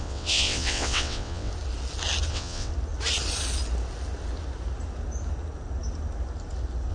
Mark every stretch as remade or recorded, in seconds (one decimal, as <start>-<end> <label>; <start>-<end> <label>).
0.0-1.5 remade; 1.5-2.3 recorded; 2.3-2.7 remade; 2.7-6.9 recorded